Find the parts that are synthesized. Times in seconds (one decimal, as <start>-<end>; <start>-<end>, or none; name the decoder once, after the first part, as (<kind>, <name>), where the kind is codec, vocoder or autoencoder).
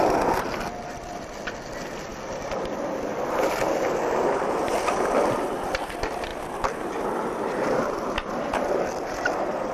6.3-8.7 (vocoder, BigVGAN v2)